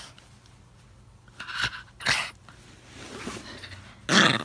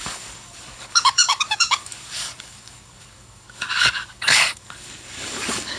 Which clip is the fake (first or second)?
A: second